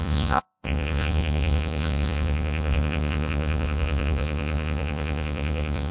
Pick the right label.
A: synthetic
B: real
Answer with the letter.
A